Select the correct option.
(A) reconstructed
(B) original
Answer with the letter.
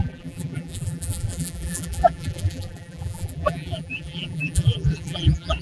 A